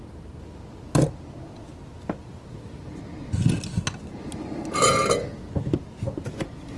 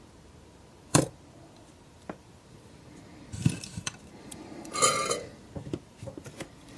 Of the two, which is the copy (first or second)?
second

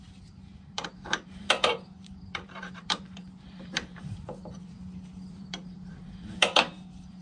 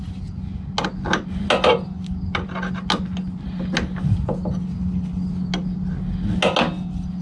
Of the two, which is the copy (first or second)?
first